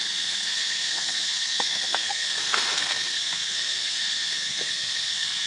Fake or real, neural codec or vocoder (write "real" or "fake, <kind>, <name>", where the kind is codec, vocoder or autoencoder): fake, codec, SNAC